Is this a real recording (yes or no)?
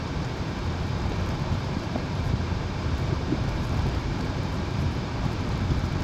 no